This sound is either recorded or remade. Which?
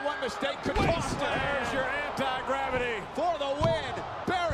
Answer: recorded